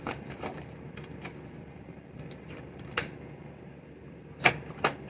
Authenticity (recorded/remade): recorded